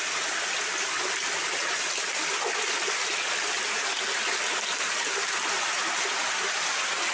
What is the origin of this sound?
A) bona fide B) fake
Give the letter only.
A